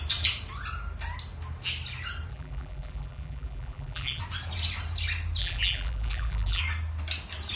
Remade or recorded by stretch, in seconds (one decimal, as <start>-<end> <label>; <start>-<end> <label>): 0.0-2.3 recorded; 2.3-4.2 remade; 4.2-5.4 recorded; 5.4-6.6 remade; 6.6-7.6 recorded